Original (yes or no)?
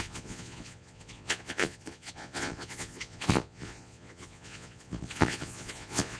no